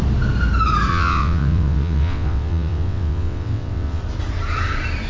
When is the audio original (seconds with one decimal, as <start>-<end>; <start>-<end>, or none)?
0.0-0.9; 4.0-5.1